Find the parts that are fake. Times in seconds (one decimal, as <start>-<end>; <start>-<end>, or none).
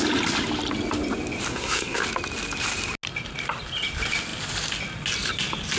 1.5-2.0